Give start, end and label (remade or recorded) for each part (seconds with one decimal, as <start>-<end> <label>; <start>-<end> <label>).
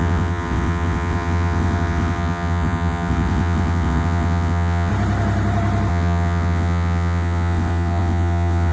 0.0-4.9 remade; 4.9-5.9 recorded; 5.9-8.7 remade